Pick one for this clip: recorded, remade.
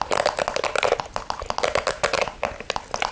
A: recorded